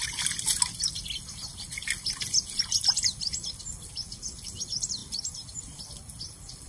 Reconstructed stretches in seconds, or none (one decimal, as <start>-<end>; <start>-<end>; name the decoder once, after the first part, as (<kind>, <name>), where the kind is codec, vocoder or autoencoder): none